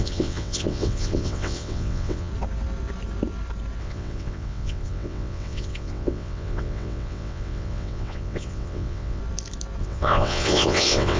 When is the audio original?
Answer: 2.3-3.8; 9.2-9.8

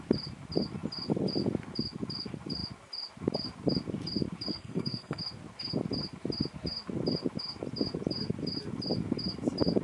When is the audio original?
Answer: 0.0-4.5; 5.2-9.8

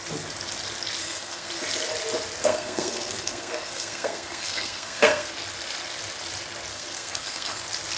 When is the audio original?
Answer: 0.0-1.0; 1.5-2.4; 5.3-6.7; 7.6-8.0

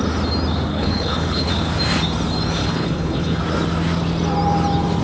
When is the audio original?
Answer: 0.0-0.7; 1.5-2.6; 3.4-5.0

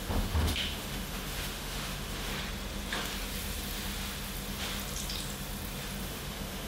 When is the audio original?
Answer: 2.3-6.0